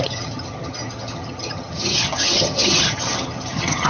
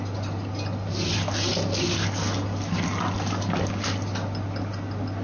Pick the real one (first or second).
second